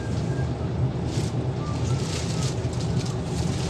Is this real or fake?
real